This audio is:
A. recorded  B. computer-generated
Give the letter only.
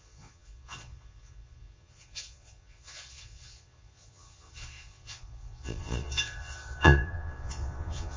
B